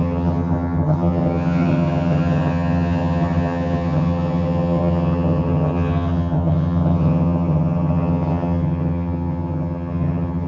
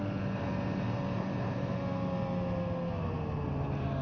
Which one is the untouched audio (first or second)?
second